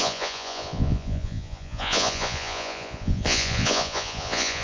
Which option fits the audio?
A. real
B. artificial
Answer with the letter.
B